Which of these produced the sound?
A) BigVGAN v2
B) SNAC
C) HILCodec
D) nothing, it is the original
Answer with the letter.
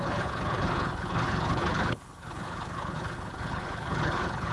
C